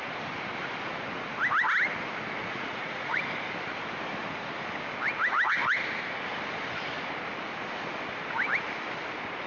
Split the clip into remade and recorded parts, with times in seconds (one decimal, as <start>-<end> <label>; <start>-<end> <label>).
0.0-2.4 recorded; 2.4-3.2 remade; 3.2-9.5 recorded